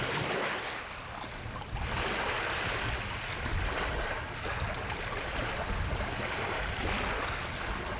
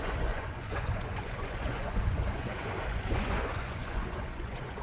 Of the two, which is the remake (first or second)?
second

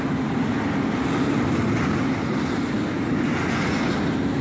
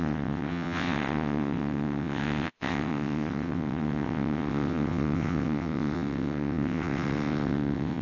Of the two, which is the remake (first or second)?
second